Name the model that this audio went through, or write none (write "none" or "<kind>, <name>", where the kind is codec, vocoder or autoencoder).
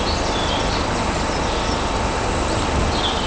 none